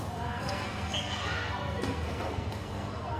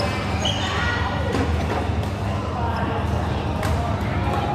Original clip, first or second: second